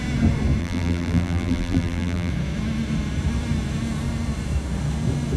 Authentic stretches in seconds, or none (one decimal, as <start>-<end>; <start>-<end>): 0.0-0.6; 2.3-5.4